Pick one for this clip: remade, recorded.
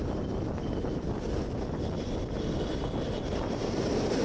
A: recorded